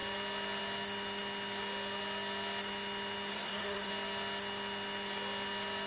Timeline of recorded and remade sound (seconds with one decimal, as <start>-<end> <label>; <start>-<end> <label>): 0.0-3.3 recorded; 3.3-3.9 remade; 3.9-5.9 recorded